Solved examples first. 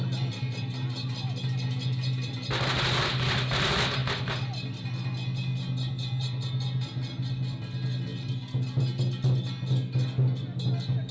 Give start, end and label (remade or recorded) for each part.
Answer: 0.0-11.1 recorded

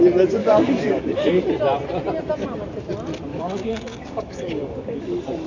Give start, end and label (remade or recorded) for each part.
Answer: 0.0-0.4 recorded; 0.4-1.4 remade; 1.4-3.3 recorded; 3.3-5.0 remade; 5.0-5.5 recorded

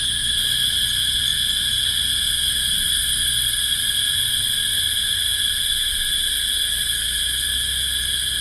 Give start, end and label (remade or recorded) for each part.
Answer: 0.0-8.4 recorded

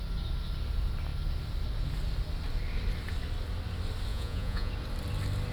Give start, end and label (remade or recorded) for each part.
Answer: 0.0-4.1 recorded; 4.1-4.7 remade; 4.7-5.5 recorded

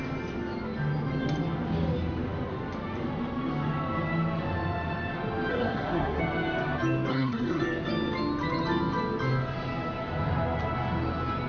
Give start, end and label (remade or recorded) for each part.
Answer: 0.0-5.5 recorded; 5.5-6.2 remade; 6.2-7.1 recorded; 7.1-7.6 remade; 7.6-11.5 recorded

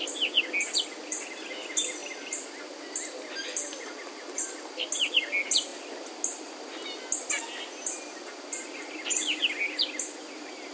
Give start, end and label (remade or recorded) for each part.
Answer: 0.0-10.7 recorded

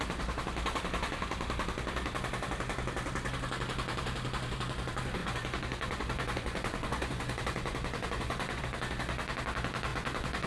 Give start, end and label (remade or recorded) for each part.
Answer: 0.0-5.2 recorded; 5.2-8.6 remade; 8.6-9.9 recorded; 9.9-10.5 remade